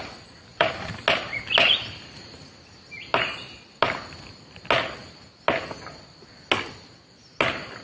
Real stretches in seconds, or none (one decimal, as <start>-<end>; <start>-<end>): 1.0-7.8